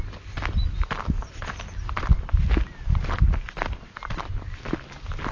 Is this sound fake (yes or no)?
no